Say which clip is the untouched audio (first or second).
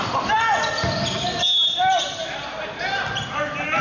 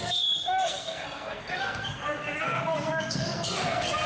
first